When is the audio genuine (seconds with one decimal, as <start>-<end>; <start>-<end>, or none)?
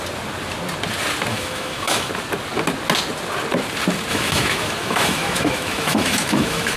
0.0-1.3; 2.1-4.1